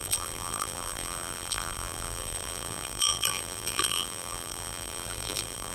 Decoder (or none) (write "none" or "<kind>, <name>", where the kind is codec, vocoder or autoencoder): vocoder, BigVGAN v2